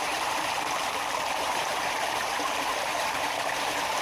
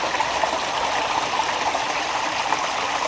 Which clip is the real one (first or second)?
second